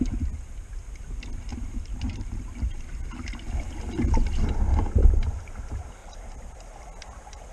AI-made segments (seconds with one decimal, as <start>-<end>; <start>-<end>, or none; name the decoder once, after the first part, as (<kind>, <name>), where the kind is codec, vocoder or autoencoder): 1.5-2.4 (vocoder, BigVGAN v2); 6.0-6.8

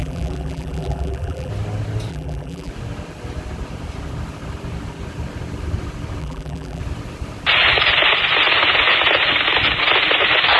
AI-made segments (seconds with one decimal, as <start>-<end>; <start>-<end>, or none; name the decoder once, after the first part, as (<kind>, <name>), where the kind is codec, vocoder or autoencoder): 0.0-1.5 (vocoder, BigVGAN v2); 2.1-2.7; 6.2-6.8

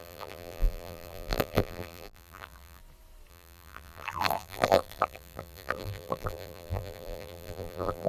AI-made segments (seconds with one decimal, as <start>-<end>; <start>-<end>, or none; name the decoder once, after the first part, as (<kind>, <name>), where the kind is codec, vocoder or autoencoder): 0.0-2.8 (vocoder, BigVGAN v2); 3.3-8.1

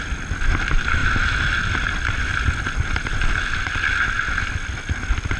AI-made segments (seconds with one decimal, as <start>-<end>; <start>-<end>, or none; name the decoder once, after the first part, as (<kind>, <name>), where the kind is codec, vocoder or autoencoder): none

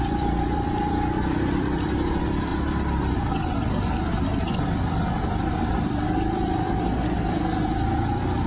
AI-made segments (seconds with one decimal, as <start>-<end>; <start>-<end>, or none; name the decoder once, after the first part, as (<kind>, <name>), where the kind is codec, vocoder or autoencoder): 0.0-2.5 (vocoder, BigVGAN v2); 4.6-8.5